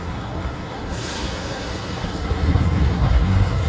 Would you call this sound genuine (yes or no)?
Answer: no